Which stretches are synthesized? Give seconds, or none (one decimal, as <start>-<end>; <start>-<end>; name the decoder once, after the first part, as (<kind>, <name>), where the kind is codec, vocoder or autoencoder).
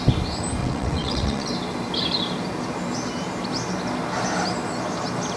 0.6-1.5 (vocoder, WaveNeXt)